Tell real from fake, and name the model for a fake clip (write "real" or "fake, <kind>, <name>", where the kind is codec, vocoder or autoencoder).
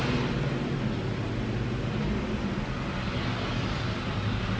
real